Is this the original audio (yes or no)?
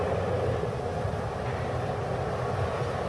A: yes